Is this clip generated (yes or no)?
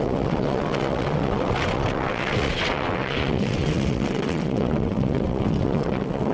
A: yes